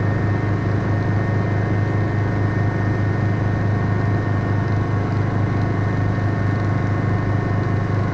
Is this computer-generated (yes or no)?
no